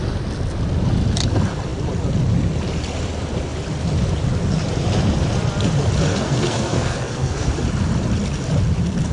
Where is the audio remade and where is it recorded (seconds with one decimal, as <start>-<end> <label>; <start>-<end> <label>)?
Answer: 0.0-6.1 recorded; 6.1-7.5 remade; 7.5-9.1 recorded